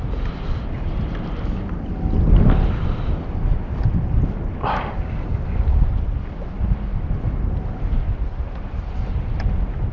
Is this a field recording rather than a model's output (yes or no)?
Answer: yes